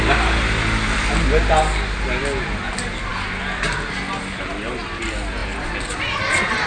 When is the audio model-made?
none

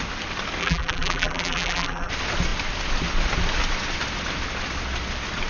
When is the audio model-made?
0.6-2.1 (vocoder, BigVGAN v2)

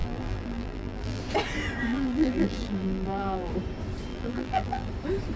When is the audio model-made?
0.0-1.2 (vocoder, BigVGAN v2); 1.9-3.5; 4.1-4.9

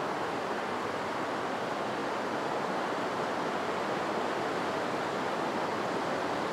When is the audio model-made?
none

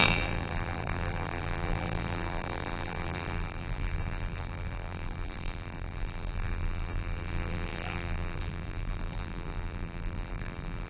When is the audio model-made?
0.0-10.9 (vocoder, BigVGAN v2)

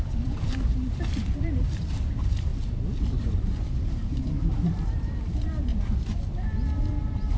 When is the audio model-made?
0.0-2.5 (vocoder, BigVGAN v2); 3.2-5.7; 6.9-7.4